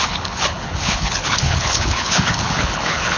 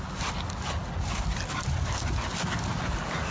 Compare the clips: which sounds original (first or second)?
second